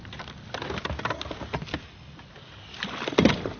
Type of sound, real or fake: real